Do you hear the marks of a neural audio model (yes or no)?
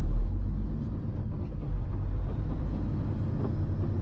no